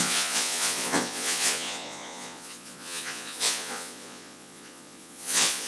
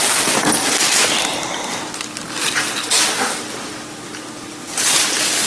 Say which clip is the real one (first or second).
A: second